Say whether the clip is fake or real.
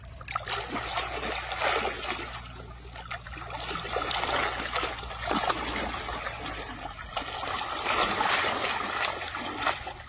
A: real